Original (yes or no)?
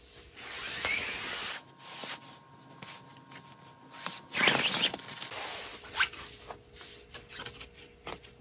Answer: yes